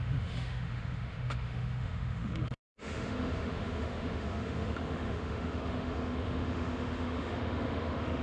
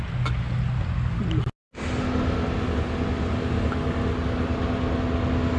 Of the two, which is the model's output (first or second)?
first